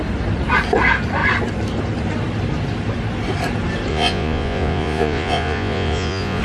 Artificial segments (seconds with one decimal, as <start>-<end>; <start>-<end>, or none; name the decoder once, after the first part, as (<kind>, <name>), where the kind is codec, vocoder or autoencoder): 3.9-6.4 (vocoder, Vocos)